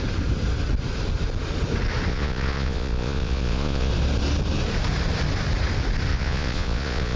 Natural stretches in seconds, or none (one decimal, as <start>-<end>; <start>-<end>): 0.0-2.1; 3.9-6.1